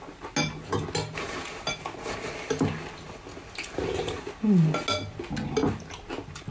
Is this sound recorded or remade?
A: recorded